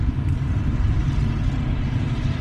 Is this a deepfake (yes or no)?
no